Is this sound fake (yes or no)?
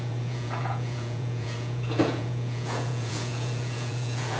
yes